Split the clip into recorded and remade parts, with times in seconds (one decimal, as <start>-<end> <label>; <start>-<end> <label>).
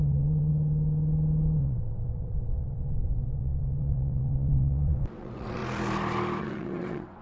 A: 0.0-0.5 remade; 0.5-1.6 recorded; 1.6-5.6 remade; 5.6-6.4 recorded; 6.4-7.2 remade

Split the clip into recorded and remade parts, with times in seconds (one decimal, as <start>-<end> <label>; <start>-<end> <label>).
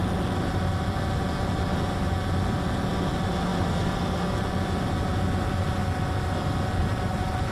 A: 0.0-6.8 recorded; 6.8-7.5 remade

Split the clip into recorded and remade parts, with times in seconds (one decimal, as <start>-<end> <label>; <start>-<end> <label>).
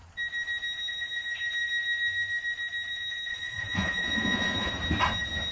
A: 0.0-3.3 recorded; 3.3-4.7 remade; 4.7-5.5 recorded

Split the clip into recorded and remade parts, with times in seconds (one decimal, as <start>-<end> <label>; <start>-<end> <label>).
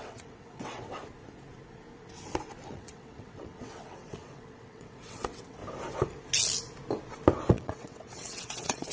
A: 0.0-1.0 remade; 1.0-2.7 recorded; 2.7-5.6 remade; 5.6-7.5 recorded; 7.5-8.9 remade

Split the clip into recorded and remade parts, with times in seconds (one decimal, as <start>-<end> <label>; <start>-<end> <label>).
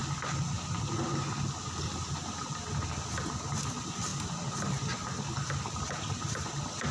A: 0.0-6.9 recorded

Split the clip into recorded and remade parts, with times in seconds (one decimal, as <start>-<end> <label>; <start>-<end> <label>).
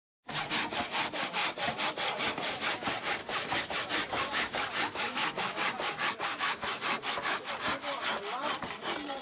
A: 0.0-3.2 recorded; 3.2-7.5 remade; 7.5-9.2 recorded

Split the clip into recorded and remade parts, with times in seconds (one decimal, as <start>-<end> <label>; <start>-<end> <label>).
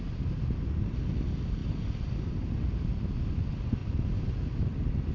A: 0.0-1.6 recorded; 1.6-2.3 remade; 2.3-3.8 recorded; 3.8-4.3 remade; 4.3-5.1 recorded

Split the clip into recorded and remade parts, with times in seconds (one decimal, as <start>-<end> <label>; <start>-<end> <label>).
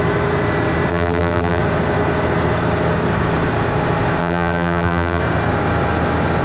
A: 0.0-0.9 recorded; 0.9-1.6 remade; 1.6-4.2 recorded; 4.2-5.2 remade; 5.2-6.4 recorded